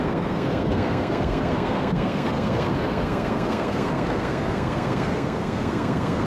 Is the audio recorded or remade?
remade